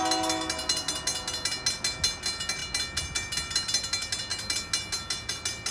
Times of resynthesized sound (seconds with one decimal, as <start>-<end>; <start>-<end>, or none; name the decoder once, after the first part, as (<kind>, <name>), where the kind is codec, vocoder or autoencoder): none